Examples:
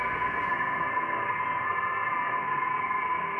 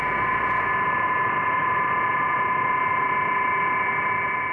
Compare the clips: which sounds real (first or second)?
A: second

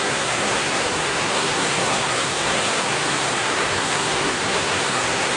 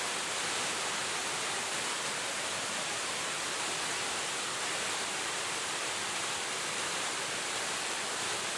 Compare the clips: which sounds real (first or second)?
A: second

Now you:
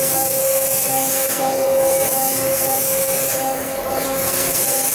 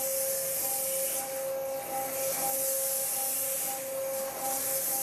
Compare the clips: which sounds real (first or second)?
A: second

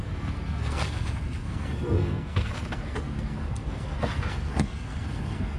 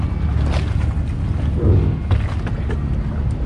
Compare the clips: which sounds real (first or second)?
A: second